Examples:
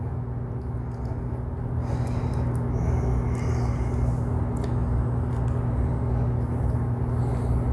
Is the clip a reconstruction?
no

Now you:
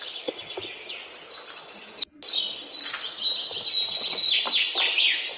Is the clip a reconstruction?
no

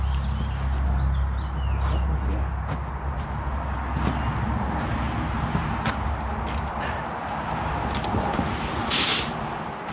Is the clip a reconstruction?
no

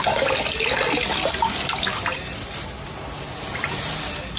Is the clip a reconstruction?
no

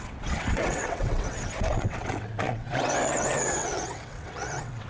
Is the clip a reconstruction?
yes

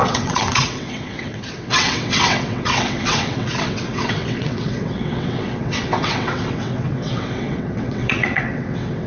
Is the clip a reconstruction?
yes